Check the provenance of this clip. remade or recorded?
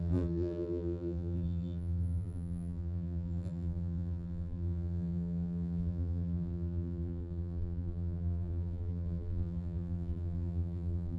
remade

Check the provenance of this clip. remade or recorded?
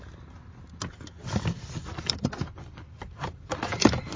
recorded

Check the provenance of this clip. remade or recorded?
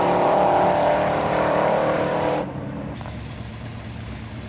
remade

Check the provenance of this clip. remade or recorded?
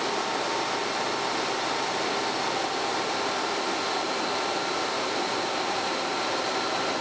recorded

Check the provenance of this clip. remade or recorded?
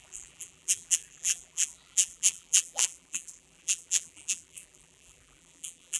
remade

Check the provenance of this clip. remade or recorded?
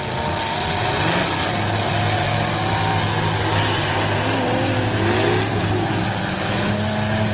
recorded